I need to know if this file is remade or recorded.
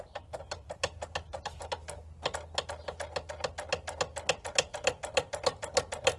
recorded